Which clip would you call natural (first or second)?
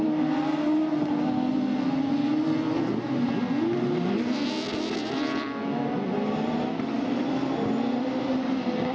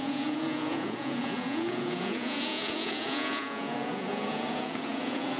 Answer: first